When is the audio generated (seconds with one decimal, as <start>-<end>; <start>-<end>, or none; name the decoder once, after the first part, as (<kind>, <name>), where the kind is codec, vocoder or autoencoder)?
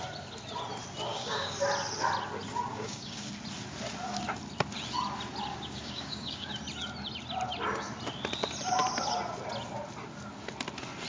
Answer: 1.1-1.6 (codec, DAC); 2.7-3.3; 5.5-6.5